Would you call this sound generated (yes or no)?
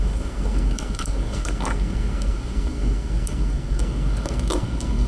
yes